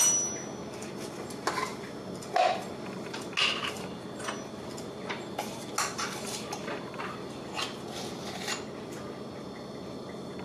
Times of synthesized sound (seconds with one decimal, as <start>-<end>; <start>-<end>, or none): none